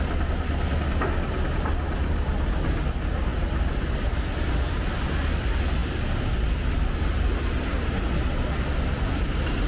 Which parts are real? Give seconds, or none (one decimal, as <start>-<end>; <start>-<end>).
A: 0.0-9.7